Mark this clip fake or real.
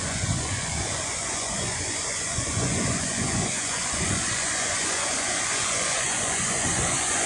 fake